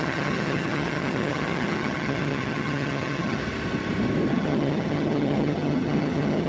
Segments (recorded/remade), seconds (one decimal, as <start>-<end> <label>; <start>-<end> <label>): 0.0-3.4 remade; 3.4-4.3 recorded; 4.3-6.5 remade